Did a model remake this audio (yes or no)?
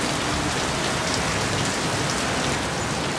no